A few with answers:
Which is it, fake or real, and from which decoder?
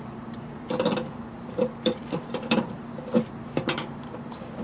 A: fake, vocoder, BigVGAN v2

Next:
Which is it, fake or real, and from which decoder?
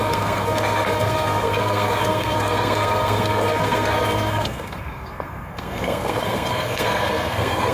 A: fake, codec, SNAC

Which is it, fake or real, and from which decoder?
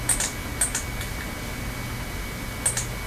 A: real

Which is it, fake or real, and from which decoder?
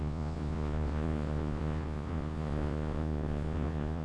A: fake, vocoder, Vocos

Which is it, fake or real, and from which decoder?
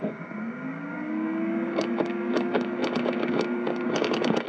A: fake, codec, DAC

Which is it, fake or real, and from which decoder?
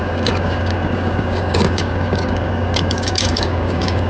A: fake, codec, DAC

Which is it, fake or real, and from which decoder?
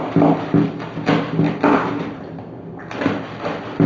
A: real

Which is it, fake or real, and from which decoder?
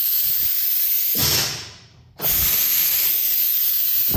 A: real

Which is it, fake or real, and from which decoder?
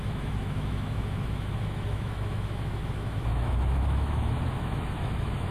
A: fake, autoencoder, DAC-VAE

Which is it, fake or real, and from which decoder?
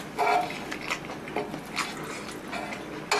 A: real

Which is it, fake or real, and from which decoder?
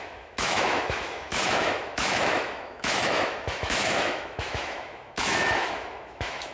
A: fake, autoencoder, DAC-VAE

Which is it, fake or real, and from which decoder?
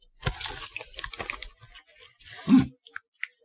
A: real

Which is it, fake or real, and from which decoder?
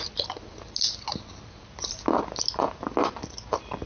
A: real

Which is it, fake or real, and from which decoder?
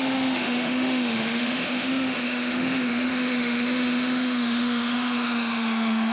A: fake, autoencoder, DAC-VAE